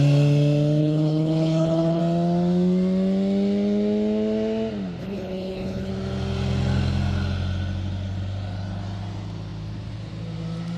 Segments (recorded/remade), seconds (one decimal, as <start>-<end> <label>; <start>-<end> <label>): 0.0-0.8 recorded; 0.8-2.0 remade; 2.0-5.0 recorded; 5.0-5.9 remade; 5.9-10.8 recorded